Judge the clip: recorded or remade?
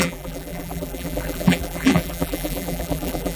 remade